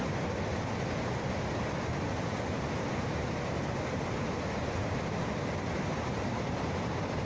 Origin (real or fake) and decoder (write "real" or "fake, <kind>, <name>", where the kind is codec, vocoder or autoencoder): real